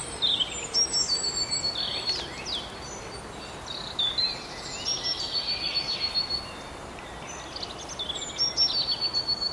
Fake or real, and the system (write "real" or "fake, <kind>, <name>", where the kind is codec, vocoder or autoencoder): real